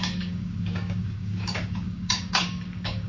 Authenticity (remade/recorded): remade